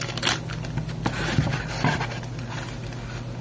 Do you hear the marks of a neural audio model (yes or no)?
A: no